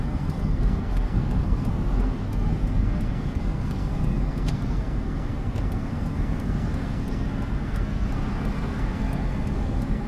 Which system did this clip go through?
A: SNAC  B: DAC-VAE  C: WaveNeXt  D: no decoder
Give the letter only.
A